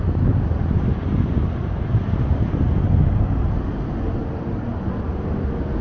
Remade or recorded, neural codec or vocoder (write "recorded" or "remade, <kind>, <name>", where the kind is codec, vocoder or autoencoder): recorded